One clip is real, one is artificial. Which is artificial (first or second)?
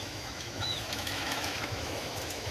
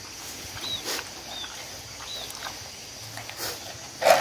first